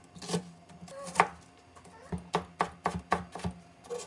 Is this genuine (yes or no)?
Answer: yes